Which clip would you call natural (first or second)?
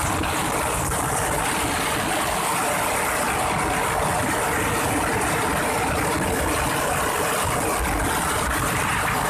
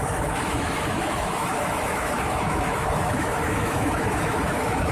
first